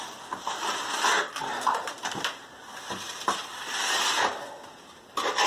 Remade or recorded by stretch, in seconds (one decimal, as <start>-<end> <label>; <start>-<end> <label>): 0.0-5.5 recorded